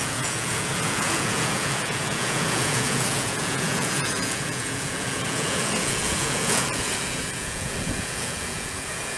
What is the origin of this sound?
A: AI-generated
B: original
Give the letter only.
A